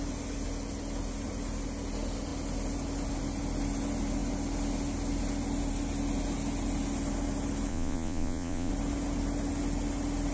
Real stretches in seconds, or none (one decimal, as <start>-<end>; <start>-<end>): 0.0-7.7; 8.7-10.3

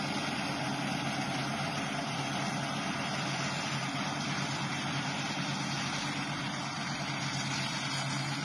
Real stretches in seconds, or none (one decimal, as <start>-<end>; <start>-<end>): 0.0-8.4

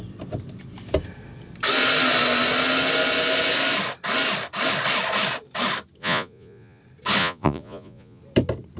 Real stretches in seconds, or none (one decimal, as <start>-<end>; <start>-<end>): 0.0-6.0; 6.8-7.2; 8.2-8.8

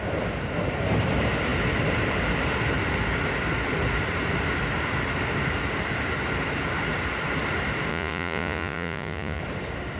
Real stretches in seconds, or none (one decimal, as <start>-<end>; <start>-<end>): 0.0-7.9; 9.4-10.0

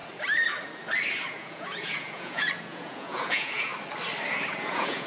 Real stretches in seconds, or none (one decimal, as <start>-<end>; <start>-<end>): 0.0-1.3; 3.7-4.5

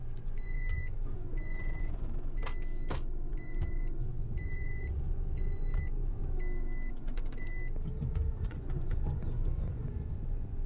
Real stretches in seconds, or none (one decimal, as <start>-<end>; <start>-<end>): 2.4-3.3; 6.2-6.9; 7.5-8.0